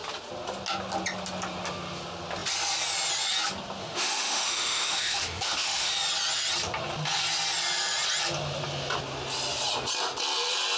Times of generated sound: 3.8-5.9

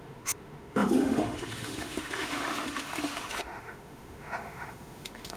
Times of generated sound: 0.0-5.4

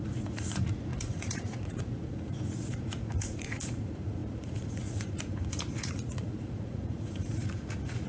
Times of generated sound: 0.0-8.1